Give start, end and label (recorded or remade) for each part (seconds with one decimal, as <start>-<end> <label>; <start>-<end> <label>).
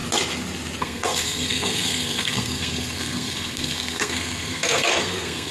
0.0-0.8 recorded; 0.8-5.5 remade